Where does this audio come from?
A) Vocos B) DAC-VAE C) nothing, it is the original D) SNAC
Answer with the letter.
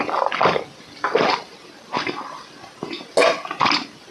C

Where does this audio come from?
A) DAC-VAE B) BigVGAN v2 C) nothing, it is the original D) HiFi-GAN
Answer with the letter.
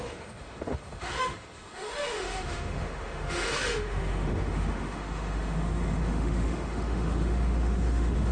A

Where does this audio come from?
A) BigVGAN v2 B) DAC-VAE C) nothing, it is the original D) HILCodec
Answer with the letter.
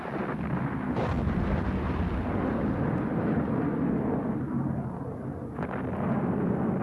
C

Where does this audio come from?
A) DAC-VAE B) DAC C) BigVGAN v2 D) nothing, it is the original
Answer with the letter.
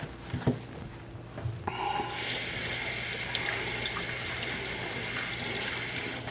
D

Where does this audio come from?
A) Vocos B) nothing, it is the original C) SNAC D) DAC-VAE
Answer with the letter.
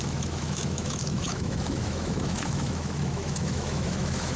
D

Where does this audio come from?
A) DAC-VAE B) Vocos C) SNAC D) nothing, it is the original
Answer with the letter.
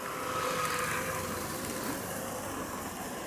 D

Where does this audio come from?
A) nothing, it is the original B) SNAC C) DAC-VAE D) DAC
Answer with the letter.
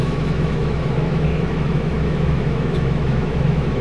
C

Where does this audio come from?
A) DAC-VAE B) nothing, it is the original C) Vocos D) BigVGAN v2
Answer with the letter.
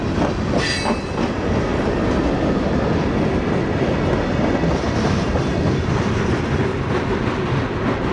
B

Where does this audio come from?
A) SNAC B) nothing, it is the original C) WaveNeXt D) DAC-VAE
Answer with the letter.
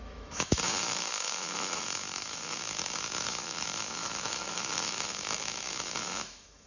D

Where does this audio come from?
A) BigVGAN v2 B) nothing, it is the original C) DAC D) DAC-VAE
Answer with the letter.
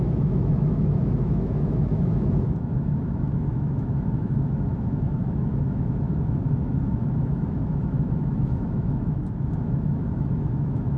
D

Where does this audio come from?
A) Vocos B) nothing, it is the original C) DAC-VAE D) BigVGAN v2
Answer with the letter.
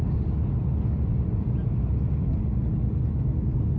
B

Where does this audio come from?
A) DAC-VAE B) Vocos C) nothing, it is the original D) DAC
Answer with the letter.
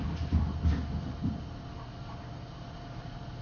C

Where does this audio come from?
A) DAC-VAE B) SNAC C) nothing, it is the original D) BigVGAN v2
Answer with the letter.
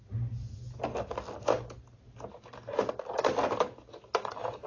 C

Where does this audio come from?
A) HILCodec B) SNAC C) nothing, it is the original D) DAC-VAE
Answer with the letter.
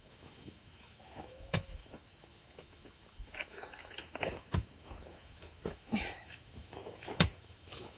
D